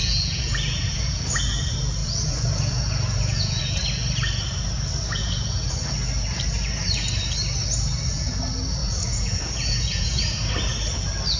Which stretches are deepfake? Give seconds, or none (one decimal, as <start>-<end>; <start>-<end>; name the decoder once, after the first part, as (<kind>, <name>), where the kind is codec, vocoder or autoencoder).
0.0-1.2 (vocoder, Vocos); 2.0-3.6; 5.2-5.7; 8.8-10.5